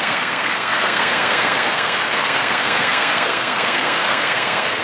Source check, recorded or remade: remade